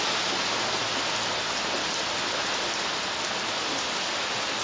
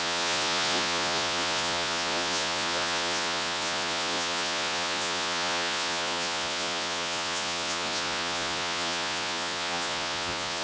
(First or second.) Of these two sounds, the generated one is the second